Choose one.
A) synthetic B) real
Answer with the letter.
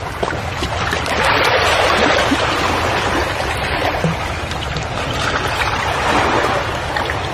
B